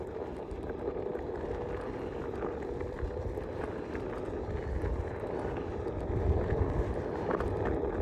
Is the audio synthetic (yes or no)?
yes